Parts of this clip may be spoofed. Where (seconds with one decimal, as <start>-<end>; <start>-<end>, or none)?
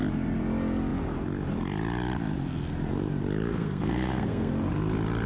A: 3.5-4.5